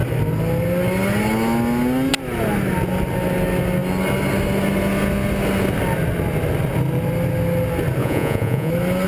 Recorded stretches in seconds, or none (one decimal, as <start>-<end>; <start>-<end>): 0.0-8.0; 8.7-9.1